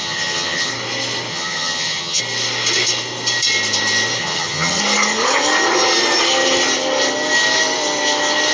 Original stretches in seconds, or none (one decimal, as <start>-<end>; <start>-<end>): 0.7-1.3; 2.2-4.2; 4.8-8.5